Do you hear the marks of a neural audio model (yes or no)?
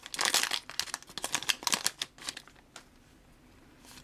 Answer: no